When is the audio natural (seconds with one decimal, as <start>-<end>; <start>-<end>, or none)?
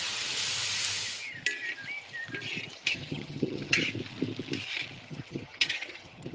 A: 0.4-2.9; 3.8-5.1